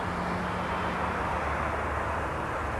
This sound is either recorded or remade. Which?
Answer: recorded